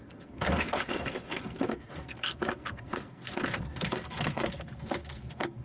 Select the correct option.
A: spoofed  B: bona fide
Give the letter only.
A